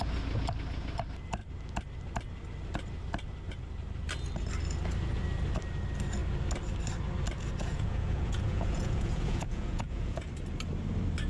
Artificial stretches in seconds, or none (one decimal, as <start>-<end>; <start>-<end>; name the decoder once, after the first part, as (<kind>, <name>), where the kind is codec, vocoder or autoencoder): 7.6-10.3 (vocoder, Vocos)